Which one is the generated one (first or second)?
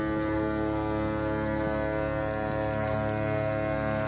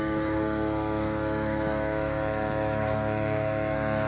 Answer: second